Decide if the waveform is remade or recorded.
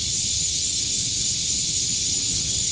remade